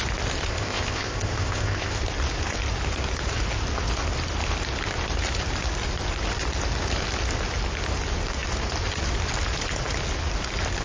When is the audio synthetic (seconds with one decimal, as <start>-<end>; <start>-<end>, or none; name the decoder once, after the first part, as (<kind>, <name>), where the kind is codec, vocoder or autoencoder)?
0.5-2.0 (codec, ZipCodec)